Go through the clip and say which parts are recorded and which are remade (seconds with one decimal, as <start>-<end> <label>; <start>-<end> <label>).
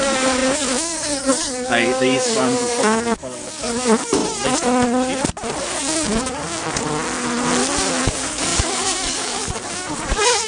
0.0-4.2 remade; 4.2-5.6 recorded; 5.6-6.6 remade; 6.6-8.0 recorded; 8.0-10.5 remade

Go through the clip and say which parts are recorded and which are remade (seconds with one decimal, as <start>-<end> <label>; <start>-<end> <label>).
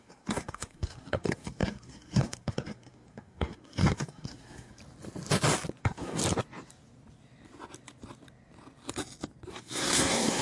0.0-4.8 remade; 4.8-5.8 recorded; 5.8-6.2 remade; 6.2-9.5 recorded; 9.5-10.4 remade